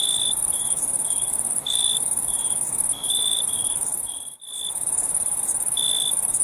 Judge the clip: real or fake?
fake